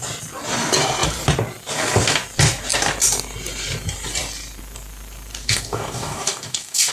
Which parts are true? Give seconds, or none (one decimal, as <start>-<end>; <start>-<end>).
0.0-5.3